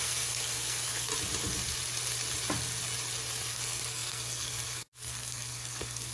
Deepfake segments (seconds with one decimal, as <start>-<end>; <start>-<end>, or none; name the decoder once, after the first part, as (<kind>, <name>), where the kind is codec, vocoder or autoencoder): 0.0-1.1 (codec, SNAC); 3.5-6.1